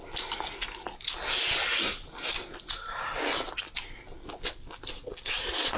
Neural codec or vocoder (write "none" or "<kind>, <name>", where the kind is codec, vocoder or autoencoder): none